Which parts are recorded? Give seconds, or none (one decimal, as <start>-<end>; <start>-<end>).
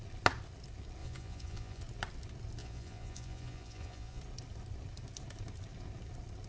0.0-1.0; 1.8-2.6; 4.2-6.5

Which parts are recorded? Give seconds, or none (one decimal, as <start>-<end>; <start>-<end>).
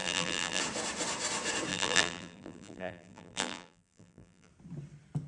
0.6-1.7; 4.5-5.3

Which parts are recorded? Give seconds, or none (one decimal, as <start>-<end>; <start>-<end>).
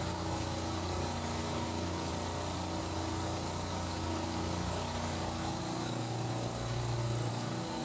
2.1-2.8; 6.8-7.3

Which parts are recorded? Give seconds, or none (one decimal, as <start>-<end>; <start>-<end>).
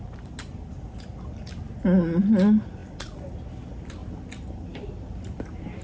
0.0-5.8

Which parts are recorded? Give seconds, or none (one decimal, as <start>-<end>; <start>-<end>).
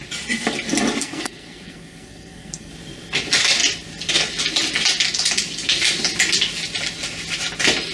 0.0-1.0; 2.7-7.9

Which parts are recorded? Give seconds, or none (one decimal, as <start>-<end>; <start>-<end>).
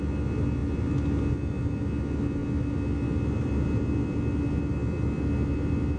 0.0-6.0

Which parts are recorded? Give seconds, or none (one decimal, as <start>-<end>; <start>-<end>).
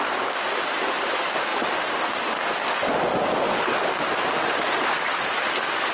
0.0-5.9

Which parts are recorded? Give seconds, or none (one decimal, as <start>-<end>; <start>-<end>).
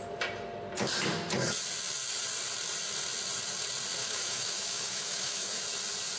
0.0-4.0; 5.6-6.2